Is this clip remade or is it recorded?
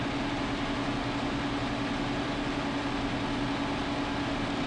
recorded